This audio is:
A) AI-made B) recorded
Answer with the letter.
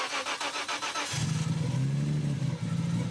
B